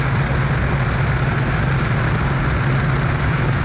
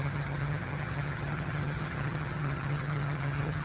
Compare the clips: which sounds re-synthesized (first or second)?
second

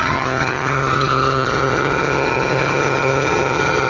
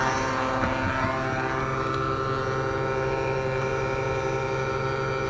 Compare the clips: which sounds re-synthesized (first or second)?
first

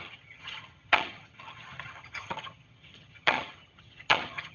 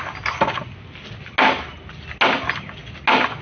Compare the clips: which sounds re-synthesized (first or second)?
first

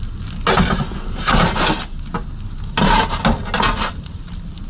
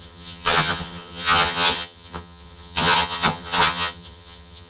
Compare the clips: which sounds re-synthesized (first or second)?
second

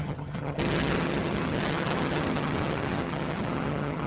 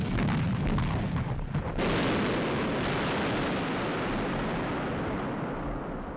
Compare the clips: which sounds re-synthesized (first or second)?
first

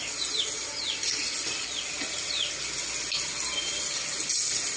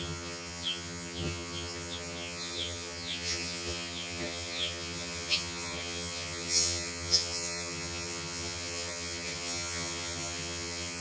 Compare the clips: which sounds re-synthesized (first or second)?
second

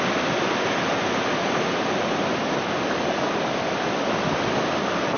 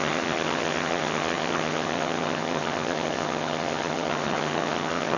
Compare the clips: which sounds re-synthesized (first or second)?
second